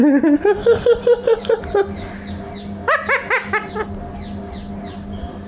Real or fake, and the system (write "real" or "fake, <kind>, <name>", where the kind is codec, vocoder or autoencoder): real